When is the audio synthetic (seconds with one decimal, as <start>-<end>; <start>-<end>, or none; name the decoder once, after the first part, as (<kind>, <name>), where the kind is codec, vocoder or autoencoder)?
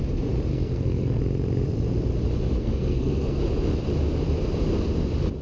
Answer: 0.5-1.2 (codec, SNAC); 2.6-3.4